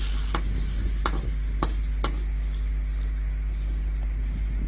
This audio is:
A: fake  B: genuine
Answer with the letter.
B